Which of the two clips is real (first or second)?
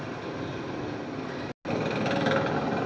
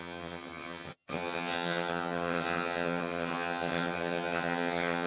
first